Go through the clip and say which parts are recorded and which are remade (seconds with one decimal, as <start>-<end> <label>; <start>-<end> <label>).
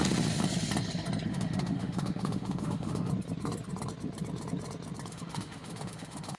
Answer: 0.0-1.3 recorded; 1.3-3.1 remade; 3.1-5.1 recorded; 5.1-6.4 remade